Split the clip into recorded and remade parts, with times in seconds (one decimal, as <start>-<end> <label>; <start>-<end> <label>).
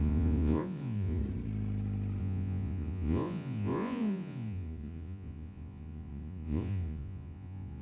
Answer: 0.0-1.2 remade; 1.2-2.2 recorded; 2.2-7.8 remade